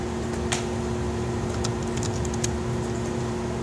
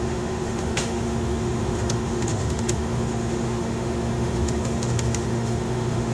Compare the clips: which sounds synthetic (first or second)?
second